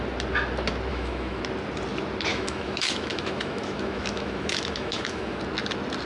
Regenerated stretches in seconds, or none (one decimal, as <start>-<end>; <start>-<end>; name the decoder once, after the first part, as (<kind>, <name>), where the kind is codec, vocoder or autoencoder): 0.9-1.4 (autoencoder, DAC-VAE); 2.3-5.4